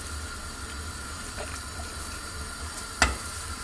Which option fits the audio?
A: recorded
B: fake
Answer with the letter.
A